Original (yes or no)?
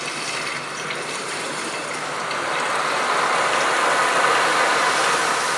yes